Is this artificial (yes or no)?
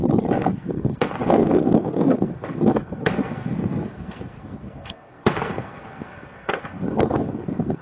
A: yes